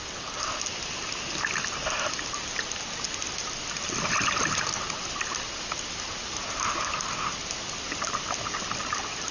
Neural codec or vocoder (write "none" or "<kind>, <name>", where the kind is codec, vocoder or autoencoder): none